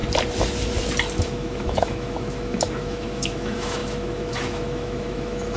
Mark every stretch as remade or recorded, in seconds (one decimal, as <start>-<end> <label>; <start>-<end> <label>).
0.0-1.2 recorded; 1.2-5.6 remade